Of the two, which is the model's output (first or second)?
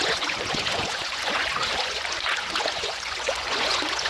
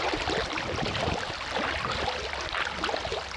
first